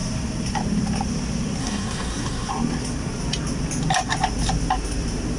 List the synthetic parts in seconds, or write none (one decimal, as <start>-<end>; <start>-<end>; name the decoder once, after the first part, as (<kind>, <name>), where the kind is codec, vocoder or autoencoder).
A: 1.6-2.5 (codec, SNAC)